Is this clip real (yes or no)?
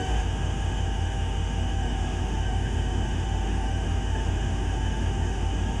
no